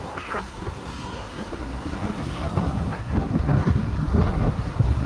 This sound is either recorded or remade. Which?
remade